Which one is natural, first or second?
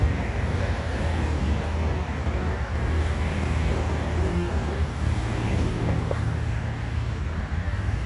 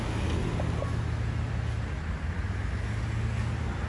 second